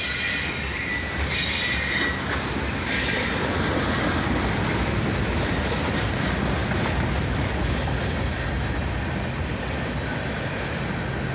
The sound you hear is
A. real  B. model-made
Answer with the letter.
A